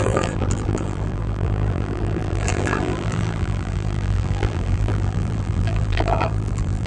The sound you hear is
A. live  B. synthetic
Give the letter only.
B